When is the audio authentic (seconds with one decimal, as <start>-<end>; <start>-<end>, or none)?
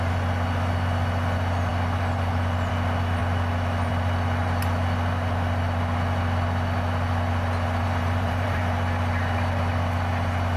0.0-7.8; 8.6-10.6